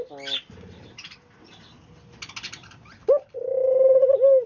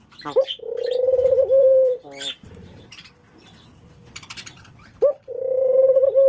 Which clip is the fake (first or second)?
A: second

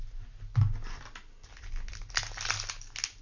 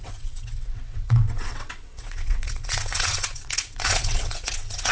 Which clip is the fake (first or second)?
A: second